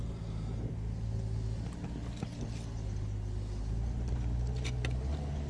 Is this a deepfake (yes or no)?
no